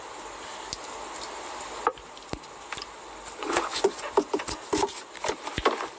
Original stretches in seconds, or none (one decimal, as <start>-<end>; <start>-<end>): 0.0-3.4; 4.0-6.0